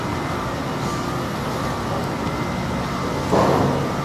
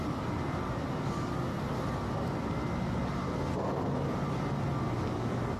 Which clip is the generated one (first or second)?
second